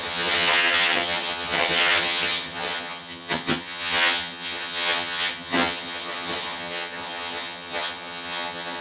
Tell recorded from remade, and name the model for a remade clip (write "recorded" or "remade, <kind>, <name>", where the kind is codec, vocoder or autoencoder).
remade, vocoder, HiFi-GAN